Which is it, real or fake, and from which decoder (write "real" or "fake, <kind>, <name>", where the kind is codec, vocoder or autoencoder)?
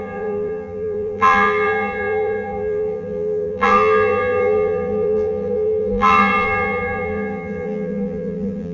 fake, vocoder, BigVGAN v2